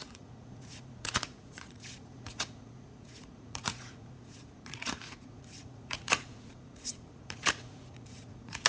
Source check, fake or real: fake